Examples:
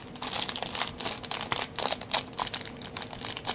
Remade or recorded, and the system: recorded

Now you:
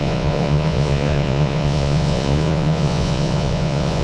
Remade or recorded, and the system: remade, vocoder, Vocos